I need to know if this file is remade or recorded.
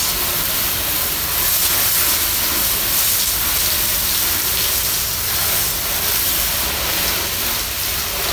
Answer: recorded